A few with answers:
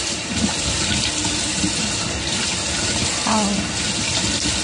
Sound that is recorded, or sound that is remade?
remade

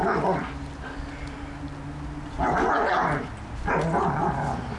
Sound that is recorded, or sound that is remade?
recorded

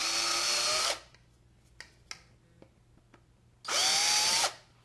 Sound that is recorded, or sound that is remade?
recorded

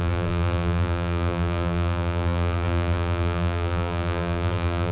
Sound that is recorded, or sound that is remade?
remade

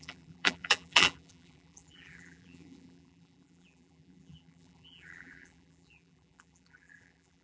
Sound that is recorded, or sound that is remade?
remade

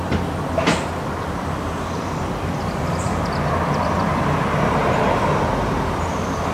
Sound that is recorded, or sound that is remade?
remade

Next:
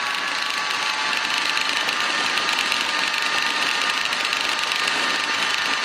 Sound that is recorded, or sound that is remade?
recorded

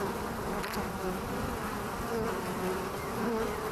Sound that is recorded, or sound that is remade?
remade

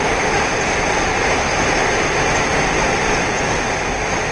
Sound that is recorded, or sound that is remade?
recorded